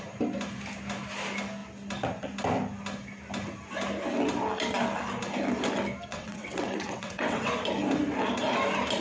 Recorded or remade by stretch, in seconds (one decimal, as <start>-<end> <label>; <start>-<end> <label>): 0.0-6.1 recorded; 6.1-7.5 remade; 7.5-9.0 recorded